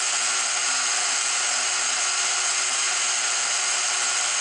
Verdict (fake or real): real